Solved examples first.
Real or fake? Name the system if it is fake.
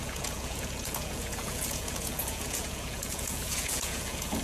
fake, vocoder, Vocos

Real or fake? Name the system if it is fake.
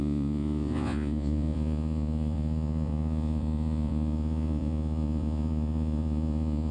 fake, vocoder, Vocos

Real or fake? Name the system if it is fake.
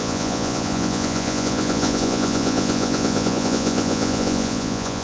fake, vocoder, Vocos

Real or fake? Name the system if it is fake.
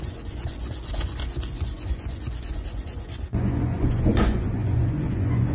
fake, vocoder, Vocos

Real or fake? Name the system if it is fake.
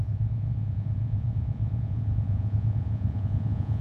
fake, vocoder, Vocos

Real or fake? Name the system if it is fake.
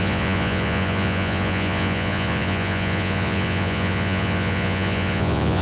fake, vocoder, Vocos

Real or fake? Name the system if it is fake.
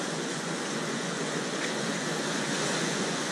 fake, vocoder, Vocos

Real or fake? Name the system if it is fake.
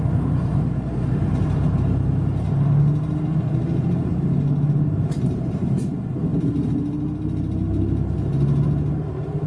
real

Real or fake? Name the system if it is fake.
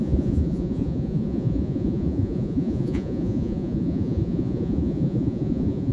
fake, vocoder, Vocos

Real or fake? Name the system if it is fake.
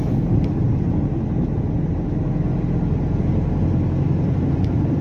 real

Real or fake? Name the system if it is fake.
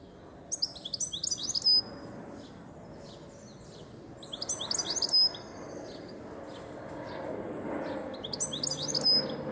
real